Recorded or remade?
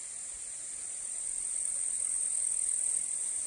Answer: recorded